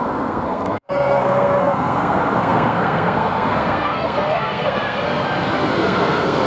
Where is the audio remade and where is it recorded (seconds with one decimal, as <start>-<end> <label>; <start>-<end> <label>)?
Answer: 0.0-6.5 remade